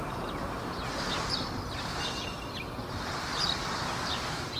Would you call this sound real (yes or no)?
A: no